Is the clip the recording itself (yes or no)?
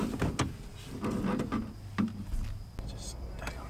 yes